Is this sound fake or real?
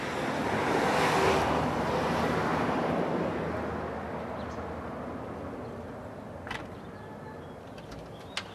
real